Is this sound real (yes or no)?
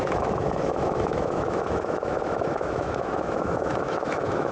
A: no